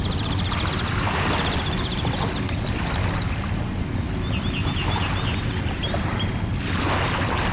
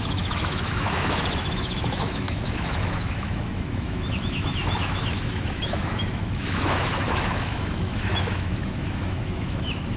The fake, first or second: second